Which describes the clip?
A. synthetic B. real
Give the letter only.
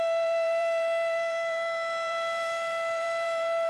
A